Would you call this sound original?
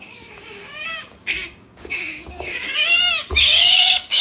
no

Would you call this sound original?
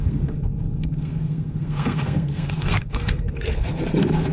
no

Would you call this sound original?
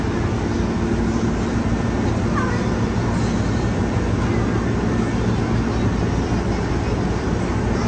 yes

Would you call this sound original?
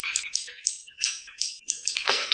no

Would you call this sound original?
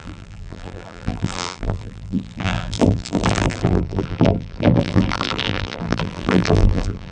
no